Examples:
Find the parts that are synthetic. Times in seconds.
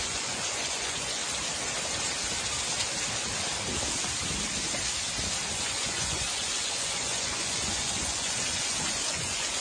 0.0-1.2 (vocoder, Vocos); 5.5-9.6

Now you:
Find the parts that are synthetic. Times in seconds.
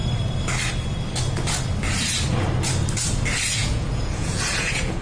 3.6-5.0 (vocoder, Vocos)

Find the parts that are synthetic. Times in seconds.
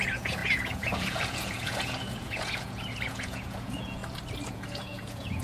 0.0-4.0 (vocoder, Vocos); 4.5-5.4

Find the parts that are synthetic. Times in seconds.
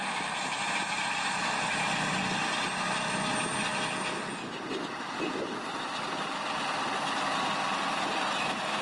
none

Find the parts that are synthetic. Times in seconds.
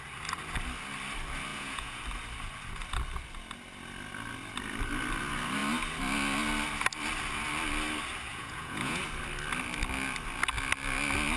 1.5-2.0 (vocoder, Vocos); 8.3-9.0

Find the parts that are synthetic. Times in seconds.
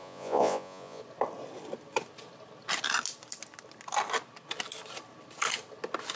0.0-1.0 (vocoder, Vocos)